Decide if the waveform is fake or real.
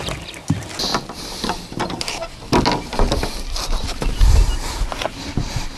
real